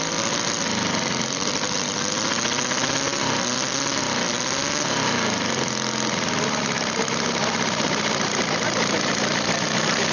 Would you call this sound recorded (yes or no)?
yes